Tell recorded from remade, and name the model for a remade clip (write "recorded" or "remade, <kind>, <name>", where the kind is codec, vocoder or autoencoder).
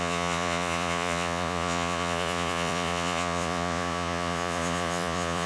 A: remade, vocoder, Vocos